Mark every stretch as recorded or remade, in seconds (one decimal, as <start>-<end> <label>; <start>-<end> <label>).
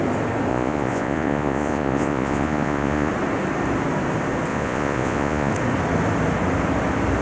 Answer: 0.0-0.5 recorded; 0.5-3.1 remade; 3.1-4.5 recorded; 4.5-5.5 remade; 5.5-7.2 recorded